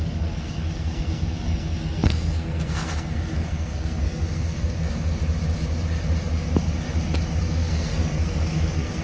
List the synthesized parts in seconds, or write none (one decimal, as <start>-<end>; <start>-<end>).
0.0-5.2; 7.4-9.0